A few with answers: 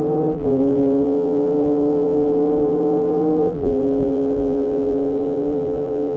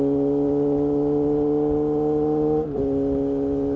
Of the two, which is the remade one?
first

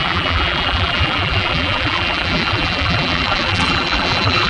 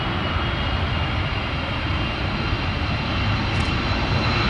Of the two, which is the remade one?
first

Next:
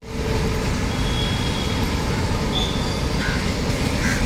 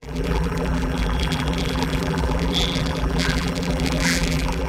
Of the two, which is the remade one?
second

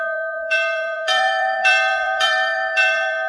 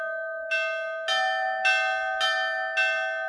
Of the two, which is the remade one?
first